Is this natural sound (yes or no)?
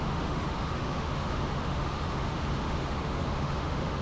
no